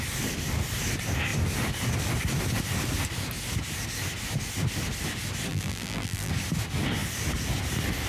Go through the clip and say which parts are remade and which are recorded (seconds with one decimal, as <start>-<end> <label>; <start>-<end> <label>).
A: 0.0-5.5 recorded; 5.5-6.3 remade; 6.3-8.1 recorded